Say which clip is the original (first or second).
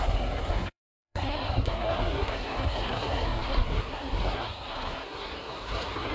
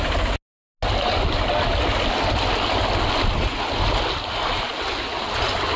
second